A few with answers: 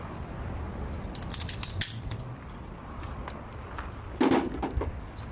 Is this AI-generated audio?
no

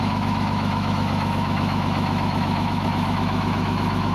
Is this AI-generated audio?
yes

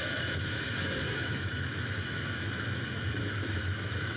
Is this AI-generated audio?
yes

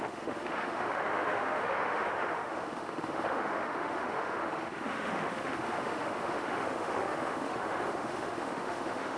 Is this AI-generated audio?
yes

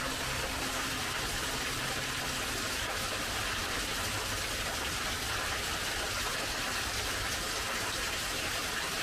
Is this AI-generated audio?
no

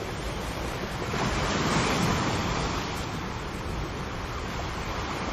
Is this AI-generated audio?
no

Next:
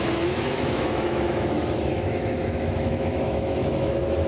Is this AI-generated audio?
yes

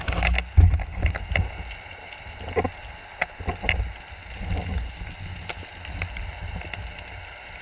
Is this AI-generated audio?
no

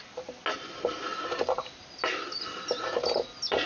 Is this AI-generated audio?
no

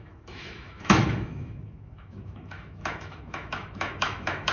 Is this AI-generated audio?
yes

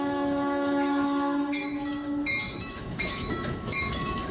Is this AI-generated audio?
yes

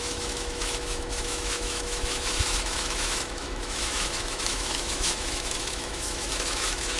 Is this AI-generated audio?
yes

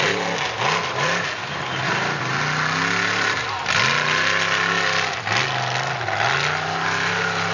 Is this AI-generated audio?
no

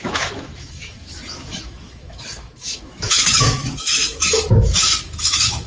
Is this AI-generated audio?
yes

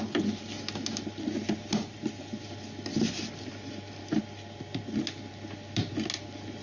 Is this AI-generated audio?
no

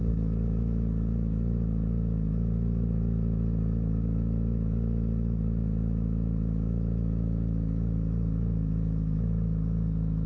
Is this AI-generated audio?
yes